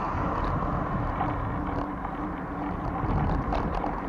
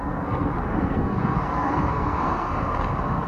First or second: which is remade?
second